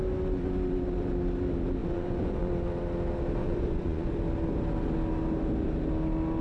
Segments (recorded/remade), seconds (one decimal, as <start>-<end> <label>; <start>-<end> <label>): 0.0-1.8 recorded; 1.8-2.5 remade; 2.5-3.4 recorded; 3.4-4.2 remade; 4.2-6.4 recorded